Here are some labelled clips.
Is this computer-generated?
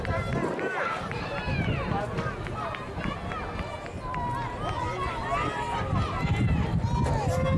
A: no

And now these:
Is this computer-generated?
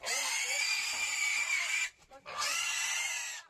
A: yes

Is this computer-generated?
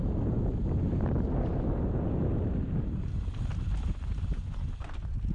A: no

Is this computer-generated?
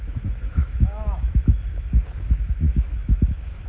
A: yes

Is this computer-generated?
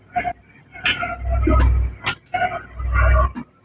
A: no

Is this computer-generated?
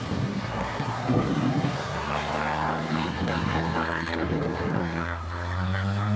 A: yes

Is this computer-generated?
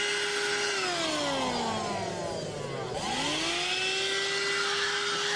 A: no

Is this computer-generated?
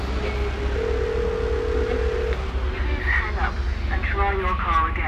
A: no